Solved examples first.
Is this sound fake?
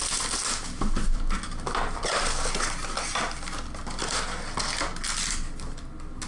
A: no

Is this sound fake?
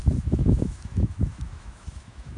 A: yes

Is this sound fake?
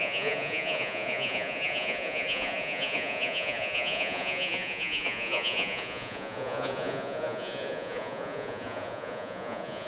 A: yes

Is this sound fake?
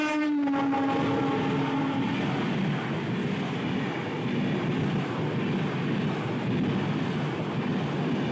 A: no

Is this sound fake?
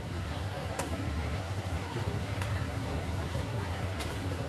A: yes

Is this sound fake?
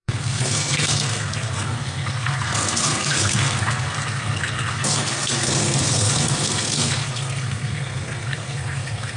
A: yes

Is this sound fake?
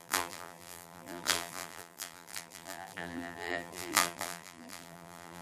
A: yes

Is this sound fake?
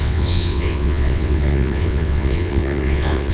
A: yes